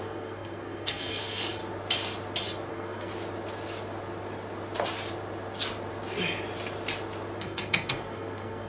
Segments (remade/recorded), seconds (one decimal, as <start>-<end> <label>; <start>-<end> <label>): 0.0-1.6 remade; 1.6-2.7 recorded; 2.7-3.1 remade; 3.1-7.4 recorded; 7.4-8.7 remade